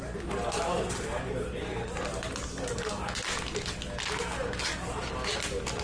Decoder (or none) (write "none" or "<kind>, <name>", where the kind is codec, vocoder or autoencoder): none